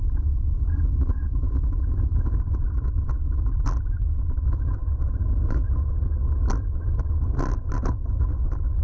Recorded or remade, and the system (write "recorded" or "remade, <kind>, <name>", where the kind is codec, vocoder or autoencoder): recorded